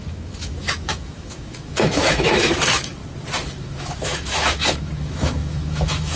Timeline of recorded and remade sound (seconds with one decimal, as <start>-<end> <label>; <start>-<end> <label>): 0.0-3.0 remade; 3.0-3.5 recorded; 3.5-6.2 remade

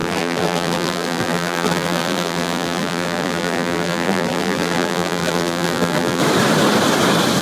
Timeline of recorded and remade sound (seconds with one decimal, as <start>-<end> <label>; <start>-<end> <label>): 0.0-6.2 remade; 6.2-7.4 recorded

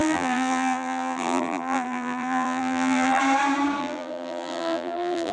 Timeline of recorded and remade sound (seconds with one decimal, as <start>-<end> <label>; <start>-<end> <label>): 0.0-3.2 remade; 3.2-3.8 recorded; 3.8-5.3 remade

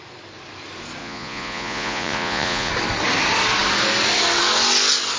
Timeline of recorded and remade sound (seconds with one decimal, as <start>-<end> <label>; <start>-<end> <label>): 0.0-1.0 recorded; 1.0-2.7 remade; 2.7-5.2 recorded